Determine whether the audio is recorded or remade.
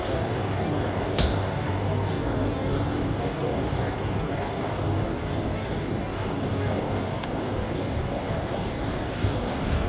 remade